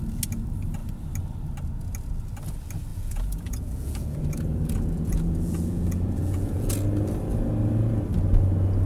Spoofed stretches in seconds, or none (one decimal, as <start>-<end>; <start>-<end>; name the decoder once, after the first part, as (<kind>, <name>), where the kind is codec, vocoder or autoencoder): 2.9-6.7 (vocoder, Vocos)